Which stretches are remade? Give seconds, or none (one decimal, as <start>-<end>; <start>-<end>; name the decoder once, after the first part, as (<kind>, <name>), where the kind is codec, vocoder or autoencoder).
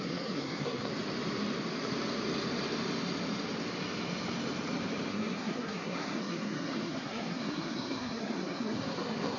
0.0-0.9 (codec, SNAC); 5.1-9.4